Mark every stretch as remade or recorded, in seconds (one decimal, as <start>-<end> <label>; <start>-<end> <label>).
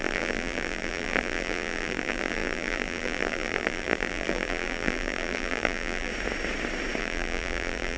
0.0-6.1 remade; 6.1-7.0 recorded; 7.0-8.0 remade